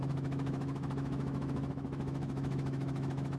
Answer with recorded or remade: remade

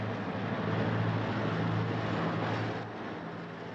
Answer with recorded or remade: recorded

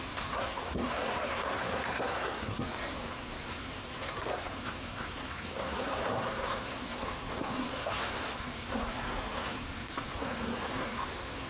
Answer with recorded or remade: remade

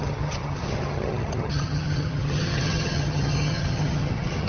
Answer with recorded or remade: remade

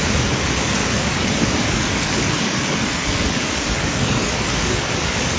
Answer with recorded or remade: remade